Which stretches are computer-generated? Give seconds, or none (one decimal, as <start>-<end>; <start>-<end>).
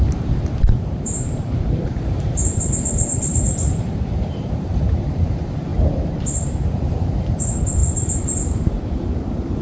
0.0-5.7; 6.7-9.6